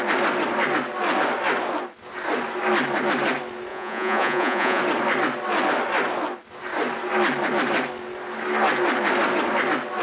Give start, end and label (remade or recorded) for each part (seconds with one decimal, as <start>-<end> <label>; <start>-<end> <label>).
0.0-3.7 recorded; 3.7-4.8 remade; 4.8-10.0 recorded